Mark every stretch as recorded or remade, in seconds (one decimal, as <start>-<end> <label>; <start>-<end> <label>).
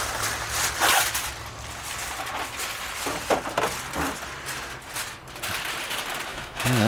0.0-6.3 recorded; 6.3-6.9 remade